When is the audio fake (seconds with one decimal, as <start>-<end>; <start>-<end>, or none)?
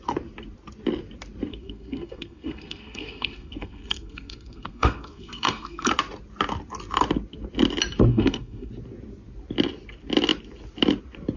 1.5-5.9; 8.1-8.7